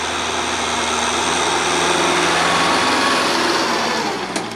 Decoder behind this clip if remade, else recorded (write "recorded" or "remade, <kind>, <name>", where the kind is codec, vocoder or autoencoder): recorded